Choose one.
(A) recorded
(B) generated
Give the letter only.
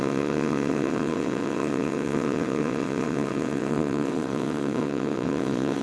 B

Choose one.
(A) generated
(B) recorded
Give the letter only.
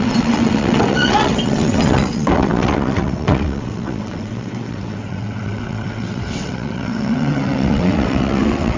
A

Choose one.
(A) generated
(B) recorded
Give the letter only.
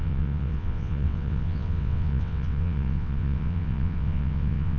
A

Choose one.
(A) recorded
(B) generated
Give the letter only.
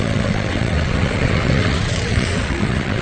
B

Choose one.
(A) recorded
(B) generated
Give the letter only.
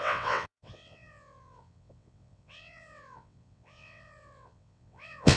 B